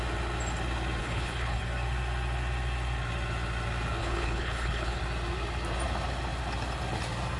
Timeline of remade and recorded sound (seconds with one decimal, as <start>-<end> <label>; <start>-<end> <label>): 0.0-1.0 recorded; 1.0-1.6 remade; 1.6-4.0 recorded; 4.0-5.0 remade; 5.0-7.4 recorded